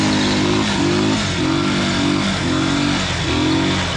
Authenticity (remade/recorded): recorded